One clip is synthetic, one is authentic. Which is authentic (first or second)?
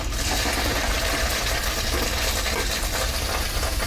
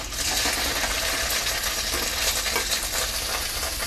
second